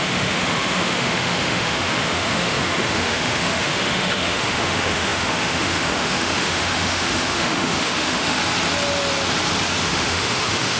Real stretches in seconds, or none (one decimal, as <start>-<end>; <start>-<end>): 8.4-9.8